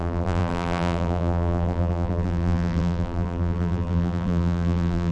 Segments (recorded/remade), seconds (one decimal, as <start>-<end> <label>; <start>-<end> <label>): 0.0-5.1 remade